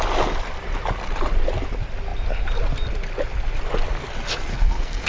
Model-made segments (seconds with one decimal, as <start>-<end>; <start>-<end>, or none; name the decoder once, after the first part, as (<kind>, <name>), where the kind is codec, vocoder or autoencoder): 4.5-5.1 (codec, SNAC)